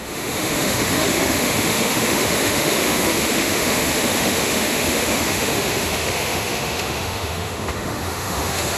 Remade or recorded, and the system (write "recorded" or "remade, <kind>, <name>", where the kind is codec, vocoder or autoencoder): remade, autoencoder, DAC-VAE